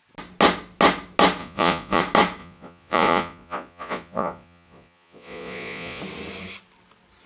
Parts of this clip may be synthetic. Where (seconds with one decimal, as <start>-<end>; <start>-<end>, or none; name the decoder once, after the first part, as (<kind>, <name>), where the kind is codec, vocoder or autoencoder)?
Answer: 1.4-2.0 (vocoder, Vocos); 2.4-6.0